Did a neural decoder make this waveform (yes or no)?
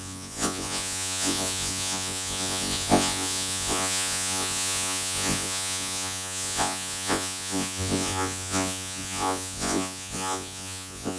yes